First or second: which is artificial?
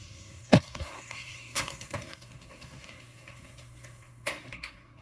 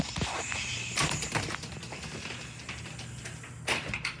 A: first